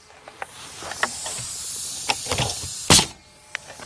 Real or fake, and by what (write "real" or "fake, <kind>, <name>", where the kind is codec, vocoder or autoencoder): real